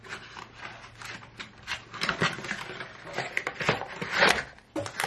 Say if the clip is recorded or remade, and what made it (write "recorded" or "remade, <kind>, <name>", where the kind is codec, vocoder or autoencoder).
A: recorded